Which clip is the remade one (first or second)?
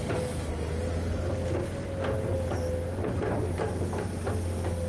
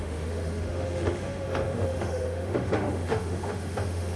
second